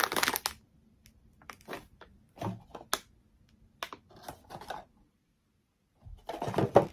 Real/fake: real